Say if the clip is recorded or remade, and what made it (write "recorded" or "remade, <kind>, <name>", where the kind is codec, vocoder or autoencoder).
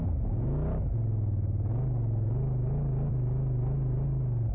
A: recorded